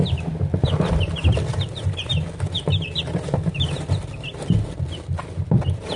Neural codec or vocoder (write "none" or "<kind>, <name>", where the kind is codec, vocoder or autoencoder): vocoder, BigVGAN v2